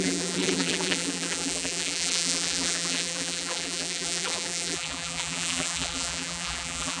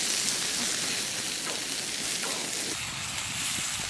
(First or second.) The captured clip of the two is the second